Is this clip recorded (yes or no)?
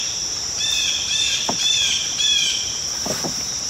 no